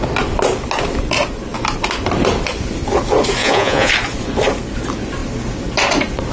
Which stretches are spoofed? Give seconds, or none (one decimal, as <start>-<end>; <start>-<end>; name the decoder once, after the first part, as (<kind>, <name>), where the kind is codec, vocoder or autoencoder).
3.4-3.9 (vocoder, Vocos)